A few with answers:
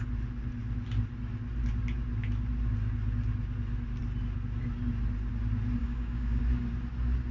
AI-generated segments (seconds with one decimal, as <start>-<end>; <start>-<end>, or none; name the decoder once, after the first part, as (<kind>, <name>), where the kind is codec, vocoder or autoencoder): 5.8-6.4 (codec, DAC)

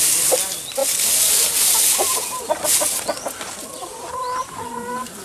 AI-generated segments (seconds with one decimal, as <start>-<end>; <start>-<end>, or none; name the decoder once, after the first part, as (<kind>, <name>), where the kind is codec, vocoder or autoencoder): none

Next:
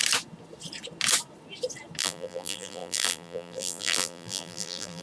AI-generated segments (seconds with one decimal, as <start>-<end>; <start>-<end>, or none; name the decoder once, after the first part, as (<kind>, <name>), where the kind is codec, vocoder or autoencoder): 2.0-5.0 (vocoder, BigVGAN v2)

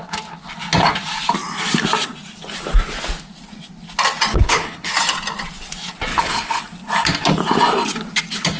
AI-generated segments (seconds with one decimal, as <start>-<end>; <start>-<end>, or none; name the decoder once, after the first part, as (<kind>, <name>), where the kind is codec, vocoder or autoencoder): 4.3-4.9 (codec, HILCodec); 6.1-6.6

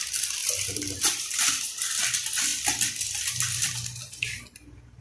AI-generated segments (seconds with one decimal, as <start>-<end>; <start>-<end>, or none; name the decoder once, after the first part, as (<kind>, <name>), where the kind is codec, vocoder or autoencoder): 0.4-1.0 (vocoder, BigVGAN v2); 2.5-5.0